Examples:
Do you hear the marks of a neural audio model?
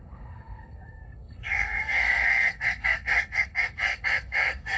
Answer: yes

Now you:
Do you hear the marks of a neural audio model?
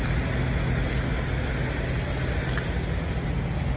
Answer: no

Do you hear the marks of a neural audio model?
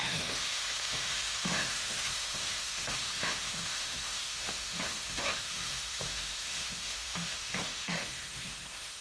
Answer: yes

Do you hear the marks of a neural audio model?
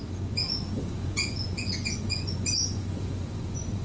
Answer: yes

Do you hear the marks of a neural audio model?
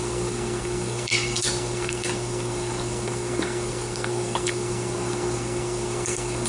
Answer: yes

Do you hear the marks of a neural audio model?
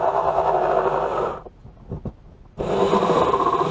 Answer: no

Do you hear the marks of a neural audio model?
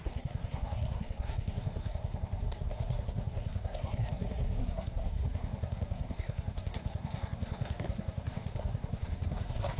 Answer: yes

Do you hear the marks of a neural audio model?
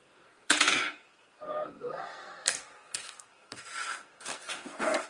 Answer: yes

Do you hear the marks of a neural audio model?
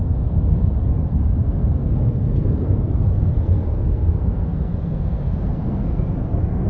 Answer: yes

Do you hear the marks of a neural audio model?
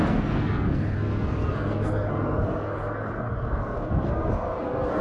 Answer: yes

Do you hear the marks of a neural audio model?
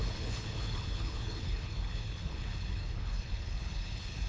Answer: yes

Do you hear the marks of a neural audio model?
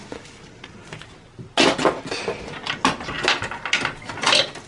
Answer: no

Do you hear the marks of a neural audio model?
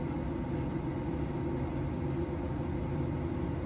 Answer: no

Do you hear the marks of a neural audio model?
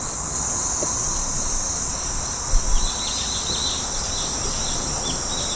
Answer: no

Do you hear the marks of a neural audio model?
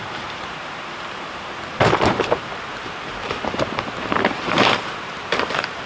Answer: yes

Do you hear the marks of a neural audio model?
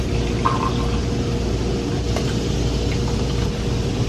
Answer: no